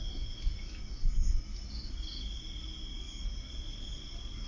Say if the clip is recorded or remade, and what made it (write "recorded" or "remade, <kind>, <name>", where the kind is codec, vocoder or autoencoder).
recorded